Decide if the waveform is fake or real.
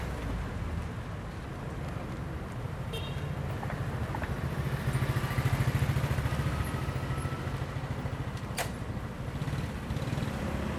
real